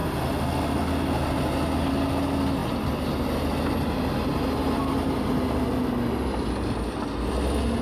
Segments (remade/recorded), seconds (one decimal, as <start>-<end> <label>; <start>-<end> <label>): 0.0-7.8 recorded